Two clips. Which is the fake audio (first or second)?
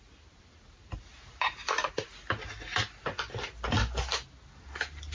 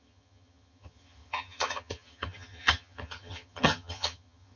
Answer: second